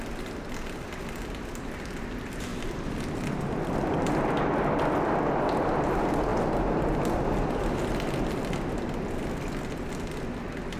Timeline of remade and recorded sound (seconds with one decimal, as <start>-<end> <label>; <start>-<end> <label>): 0.0-2.5 recorded; 2.5-4.1 remade; 4.1-10.8 recorded